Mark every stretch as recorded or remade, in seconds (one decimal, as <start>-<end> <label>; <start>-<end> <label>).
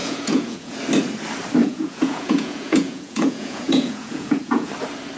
0.0-0.8 remade; 0.8-1.6 recorded; 1.6-4.7 remade; 4.7-5.2 recorded